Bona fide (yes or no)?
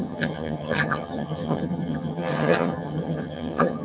no